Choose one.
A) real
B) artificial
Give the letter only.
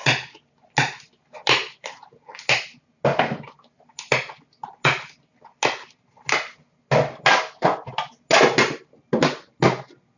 A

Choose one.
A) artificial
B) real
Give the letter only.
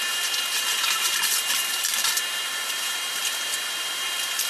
A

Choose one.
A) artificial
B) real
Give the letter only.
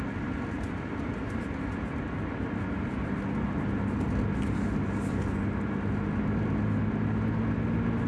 B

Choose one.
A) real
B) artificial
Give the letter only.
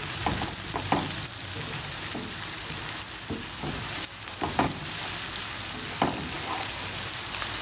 B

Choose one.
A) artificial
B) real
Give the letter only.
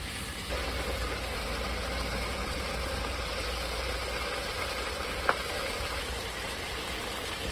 A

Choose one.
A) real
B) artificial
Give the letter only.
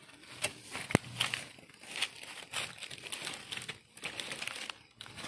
A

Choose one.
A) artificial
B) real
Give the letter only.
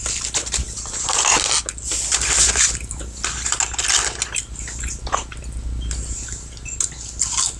B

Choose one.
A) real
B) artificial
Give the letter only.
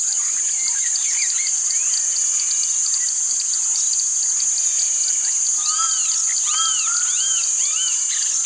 B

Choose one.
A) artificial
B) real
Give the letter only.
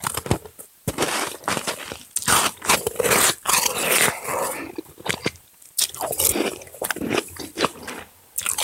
B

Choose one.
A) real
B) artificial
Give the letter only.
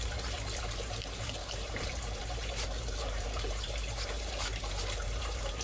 B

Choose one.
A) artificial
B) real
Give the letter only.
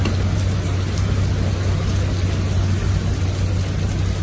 B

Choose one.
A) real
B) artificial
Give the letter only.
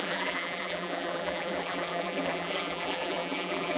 B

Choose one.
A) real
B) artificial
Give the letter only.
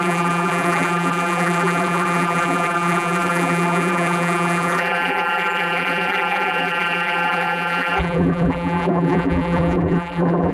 B